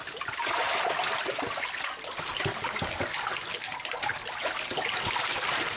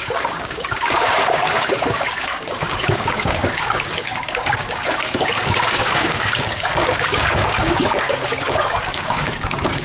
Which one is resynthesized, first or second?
second